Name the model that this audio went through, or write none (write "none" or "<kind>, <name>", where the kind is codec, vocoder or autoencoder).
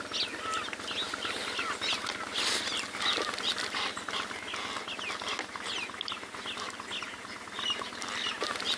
none